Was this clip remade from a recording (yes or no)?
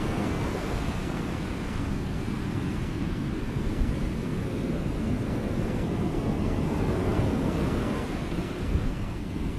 yes